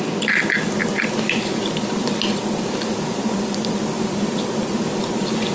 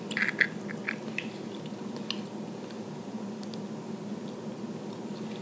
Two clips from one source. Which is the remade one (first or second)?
first